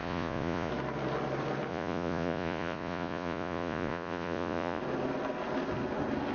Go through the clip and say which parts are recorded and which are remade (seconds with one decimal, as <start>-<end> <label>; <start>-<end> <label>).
0.0-0.7 remade; 0.7-1.7 recorded; 1.7-4.8 remade; 4.8-6.3 recorded